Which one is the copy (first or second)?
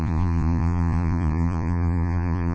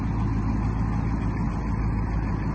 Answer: first